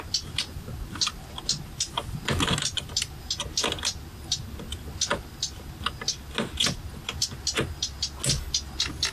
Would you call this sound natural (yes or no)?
yes